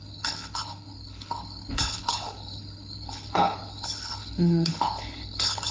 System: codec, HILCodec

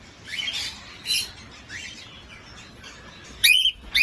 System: none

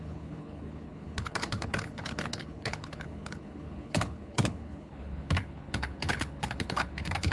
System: codec, HILCodec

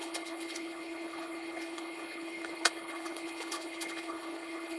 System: codec, HILCodec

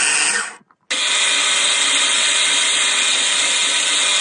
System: none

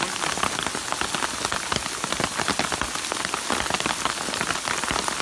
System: none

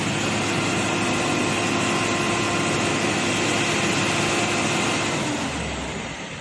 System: none